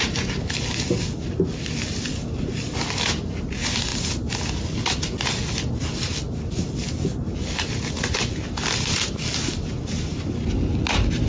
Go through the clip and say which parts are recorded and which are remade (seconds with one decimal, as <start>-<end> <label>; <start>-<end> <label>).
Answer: 0.0-11.3 recorded